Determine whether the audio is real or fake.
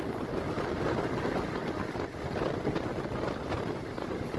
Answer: real